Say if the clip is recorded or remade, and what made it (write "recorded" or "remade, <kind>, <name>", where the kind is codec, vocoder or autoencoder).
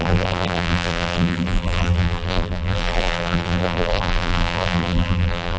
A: remade, vocoder, BigVGAN v2